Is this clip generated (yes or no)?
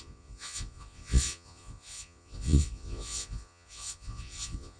yes